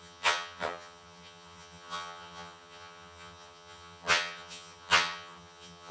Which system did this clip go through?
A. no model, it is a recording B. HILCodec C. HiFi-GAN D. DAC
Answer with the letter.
C